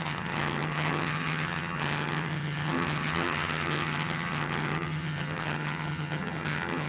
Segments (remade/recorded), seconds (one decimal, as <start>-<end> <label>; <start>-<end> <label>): 0.0-6.9 remade